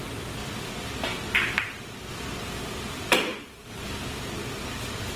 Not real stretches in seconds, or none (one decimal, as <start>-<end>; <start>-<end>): 3.3-4.2

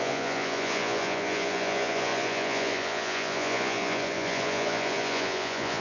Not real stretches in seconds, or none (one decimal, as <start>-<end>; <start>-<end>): 0.0-5.8

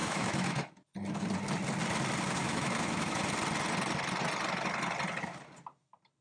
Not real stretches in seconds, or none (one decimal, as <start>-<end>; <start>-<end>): 0.0-0.7; 2.4-3.2

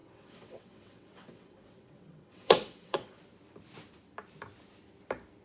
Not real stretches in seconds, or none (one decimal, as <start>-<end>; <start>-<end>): 0.0-3.2

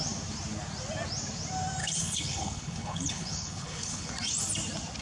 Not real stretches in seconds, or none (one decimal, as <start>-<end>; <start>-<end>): 1.8-4.1

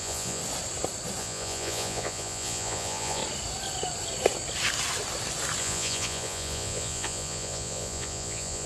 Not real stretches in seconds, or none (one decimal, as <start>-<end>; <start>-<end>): 0.0-0.4; 1.2-3.2; 5.6-8.7